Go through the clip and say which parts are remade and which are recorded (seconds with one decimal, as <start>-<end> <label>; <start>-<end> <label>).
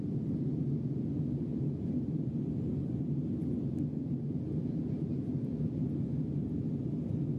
0.0-1.5 recorded; 1.5-3.8 remade; 3.8-7.4 recorded